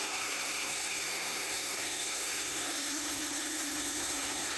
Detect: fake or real fake